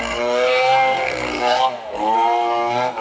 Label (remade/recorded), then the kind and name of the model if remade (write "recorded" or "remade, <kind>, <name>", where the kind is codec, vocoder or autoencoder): remade, codec, SNAC